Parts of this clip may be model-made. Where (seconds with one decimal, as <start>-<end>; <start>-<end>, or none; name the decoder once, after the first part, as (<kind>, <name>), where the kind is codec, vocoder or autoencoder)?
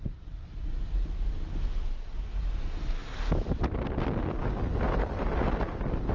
3.0-3.8 (vocoder, BigVGAN v2)